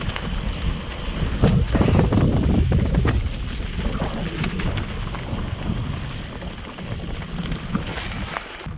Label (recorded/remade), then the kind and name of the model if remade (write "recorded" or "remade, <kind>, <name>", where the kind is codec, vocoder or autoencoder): recorded